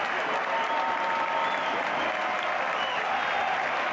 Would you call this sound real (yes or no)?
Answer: yes